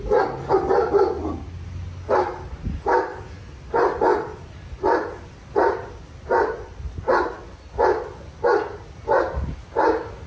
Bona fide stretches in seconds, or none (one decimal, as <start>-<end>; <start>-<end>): 0.0-4.1; 5.9-10.3

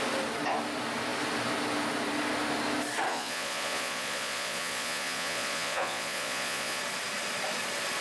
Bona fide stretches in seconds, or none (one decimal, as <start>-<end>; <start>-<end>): 0.0-3.1; 6.8-8.0

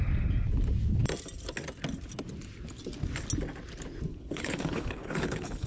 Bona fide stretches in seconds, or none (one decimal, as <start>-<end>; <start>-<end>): 0.0-4.1

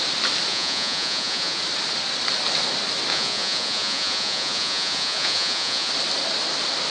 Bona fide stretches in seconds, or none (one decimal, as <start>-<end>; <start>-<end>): 0.0-0.5; 1.6-3.1; 5.9-6.9

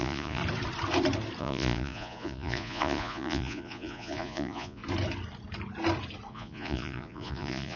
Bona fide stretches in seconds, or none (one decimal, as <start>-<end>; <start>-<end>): 0.4-1.4; 4.8-6.3